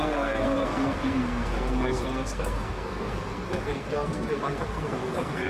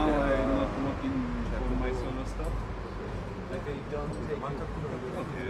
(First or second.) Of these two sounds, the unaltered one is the second